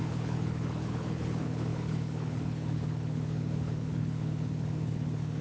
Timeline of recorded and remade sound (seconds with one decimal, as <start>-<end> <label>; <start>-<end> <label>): 0.0-5.4 remade